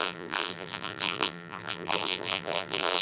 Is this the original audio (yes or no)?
no